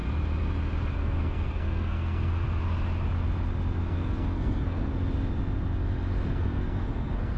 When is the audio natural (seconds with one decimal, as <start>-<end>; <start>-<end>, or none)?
0.0-0.9; 2.3-3.8; 4.9-6.3